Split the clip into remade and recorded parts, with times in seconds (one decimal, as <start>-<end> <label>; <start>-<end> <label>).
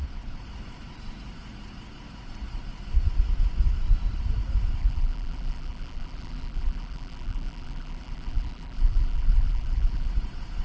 0.0-4.8 recorded; 4.8-10.1 remade; 10.1-10.6 recorded